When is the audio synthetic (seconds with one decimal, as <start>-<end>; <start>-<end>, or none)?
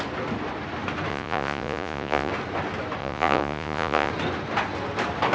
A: 1.1-2.3; 3.0-4.1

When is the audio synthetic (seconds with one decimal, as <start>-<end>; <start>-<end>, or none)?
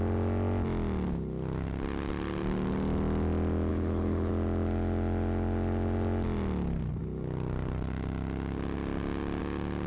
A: 3.7-4.3